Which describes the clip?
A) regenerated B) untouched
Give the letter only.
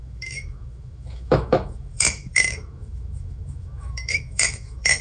A